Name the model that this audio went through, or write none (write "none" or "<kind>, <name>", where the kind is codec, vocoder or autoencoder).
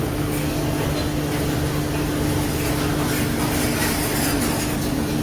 none